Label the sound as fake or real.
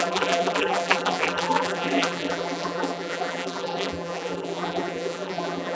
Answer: fake